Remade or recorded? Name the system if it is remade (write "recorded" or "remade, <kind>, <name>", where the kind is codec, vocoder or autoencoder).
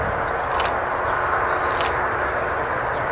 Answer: recorded